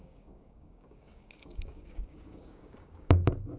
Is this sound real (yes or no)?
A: no